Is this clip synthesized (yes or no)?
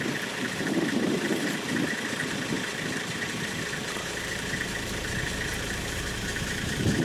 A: yes